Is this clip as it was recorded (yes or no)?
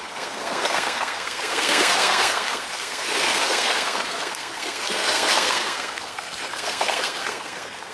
no